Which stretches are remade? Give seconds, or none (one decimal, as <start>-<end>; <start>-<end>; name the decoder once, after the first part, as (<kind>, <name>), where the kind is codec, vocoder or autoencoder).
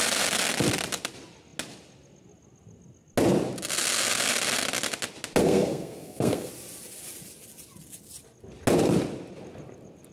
5.4-6.5 (codec, SNAC)